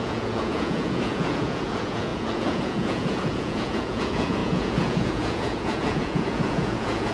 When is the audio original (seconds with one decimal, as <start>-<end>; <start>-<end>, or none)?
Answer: none